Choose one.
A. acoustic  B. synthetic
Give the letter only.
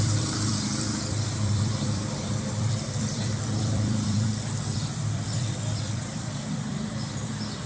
B